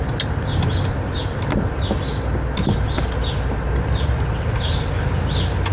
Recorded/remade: recorded